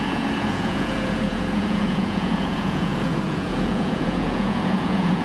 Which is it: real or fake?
fake